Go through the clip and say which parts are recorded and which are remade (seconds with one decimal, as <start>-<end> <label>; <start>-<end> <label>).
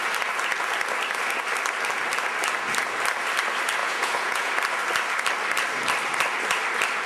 0.0-3.8 recorded; 3.8-4.5 remade; 4.5-7.1 recorded